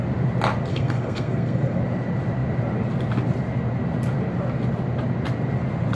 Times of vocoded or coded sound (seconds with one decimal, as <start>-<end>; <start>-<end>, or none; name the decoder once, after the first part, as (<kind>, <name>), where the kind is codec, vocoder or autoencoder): 0.7-1.8 (codec, SNAC)

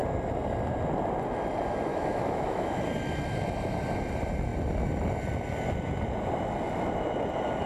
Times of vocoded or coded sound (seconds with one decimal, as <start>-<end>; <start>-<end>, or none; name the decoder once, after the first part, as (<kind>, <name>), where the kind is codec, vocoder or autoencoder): 1.9-2.8 (autoencoder, DAC-VAE)